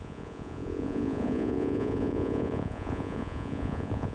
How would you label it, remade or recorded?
remade